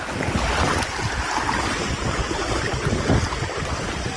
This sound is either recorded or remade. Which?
recorded